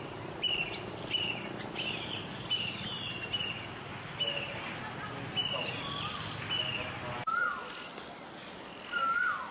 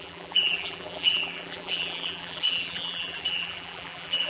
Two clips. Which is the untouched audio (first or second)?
first